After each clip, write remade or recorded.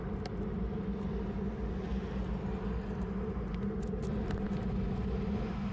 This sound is recorded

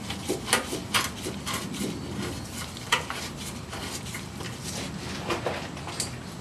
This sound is remade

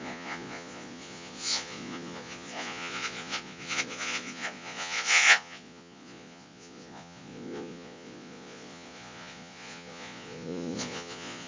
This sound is remade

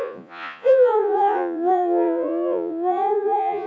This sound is remade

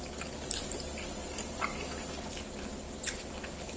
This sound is recorded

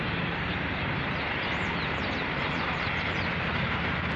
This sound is recorded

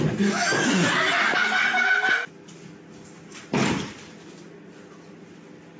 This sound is recorded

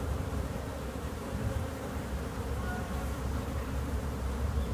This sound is remade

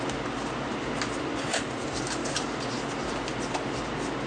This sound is recorded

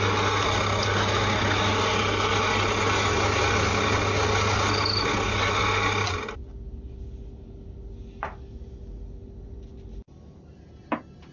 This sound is recorded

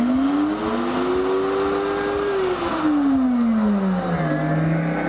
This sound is recorded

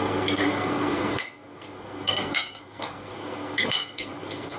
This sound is remade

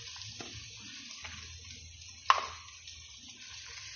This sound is recorded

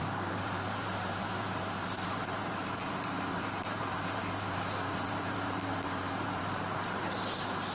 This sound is remade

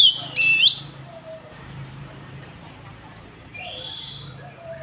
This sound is remade